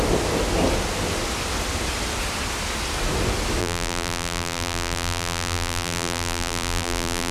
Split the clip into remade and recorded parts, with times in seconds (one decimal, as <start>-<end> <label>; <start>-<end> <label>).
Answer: 0.0-3.6 recorded; 3.6-7.3 remade